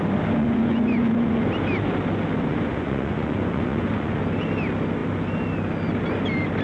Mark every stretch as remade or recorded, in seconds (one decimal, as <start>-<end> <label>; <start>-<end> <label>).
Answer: 0.0-0.4 recorded; 0.4-1.4 remade; 1.4-2.5 recorded; 2.5-4.2 remade; 4.2-6.6 recorded